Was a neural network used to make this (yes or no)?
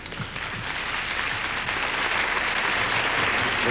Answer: no